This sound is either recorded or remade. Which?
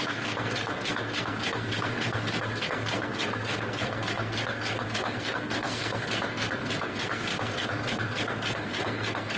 remade